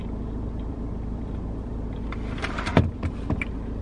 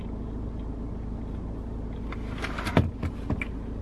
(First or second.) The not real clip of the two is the first